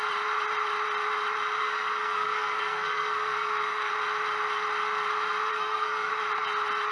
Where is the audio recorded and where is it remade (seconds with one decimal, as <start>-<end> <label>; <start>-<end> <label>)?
0.0-1.6 recorded; 1.6-3.9 remade; 3.9-5.5 recorded; 5.5-6.1 remade; 6.1-6.9 recorded